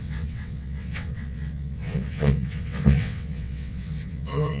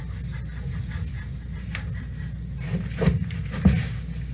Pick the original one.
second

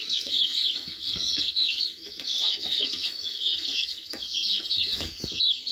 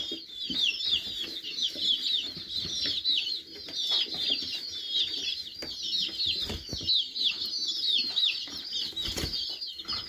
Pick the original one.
second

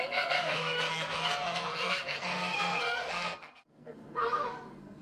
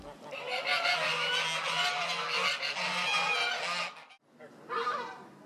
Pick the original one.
second